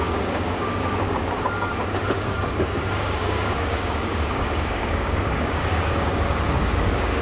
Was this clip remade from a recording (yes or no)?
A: yes